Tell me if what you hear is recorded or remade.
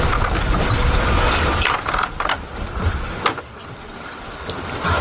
recorded